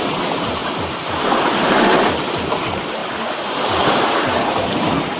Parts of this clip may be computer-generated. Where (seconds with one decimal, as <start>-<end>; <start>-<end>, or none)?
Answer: 0.0-0.6; 2.1-3.0; 3.9-5.2